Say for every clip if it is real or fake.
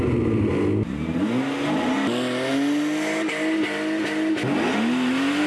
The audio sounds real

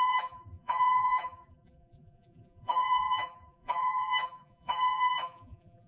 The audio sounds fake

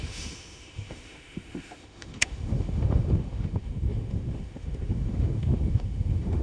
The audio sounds fake